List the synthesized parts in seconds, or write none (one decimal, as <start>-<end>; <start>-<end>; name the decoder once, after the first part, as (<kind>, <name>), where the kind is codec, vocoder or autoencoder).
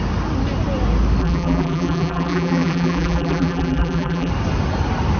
1.2-4.3 (vocoder, BigVGAN v2)